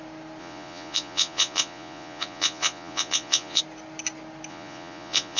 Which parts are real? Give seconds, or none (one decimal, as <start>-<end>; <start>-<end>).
0.0-0.4; 3.6-4.5